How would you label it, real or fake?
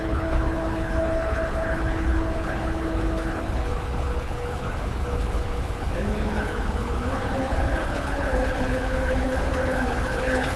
fake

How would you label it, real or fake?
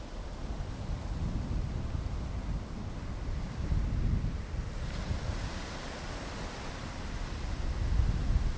real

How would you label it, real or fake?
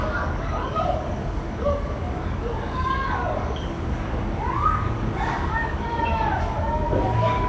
fake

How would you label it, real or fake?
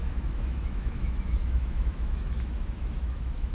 fake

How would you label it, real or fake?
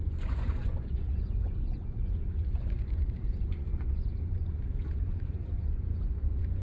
fake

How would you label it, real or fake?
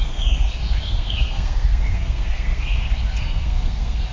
fake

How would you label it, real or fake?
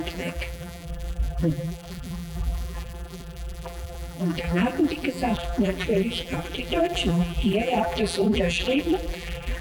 fake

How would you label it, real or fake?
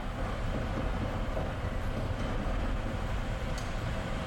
real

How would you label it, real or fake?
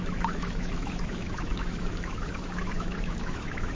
fake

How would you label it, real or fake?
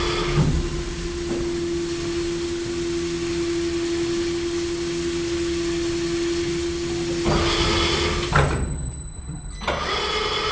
real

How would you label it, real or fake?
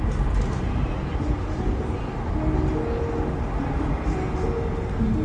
real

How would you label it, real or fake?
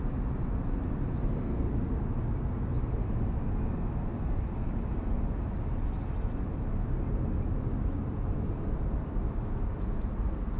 real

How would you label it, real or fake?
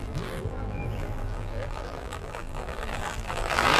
fake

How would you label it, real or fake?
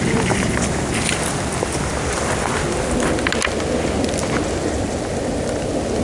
real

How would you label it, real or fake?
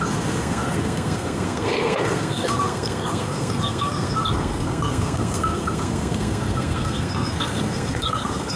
fake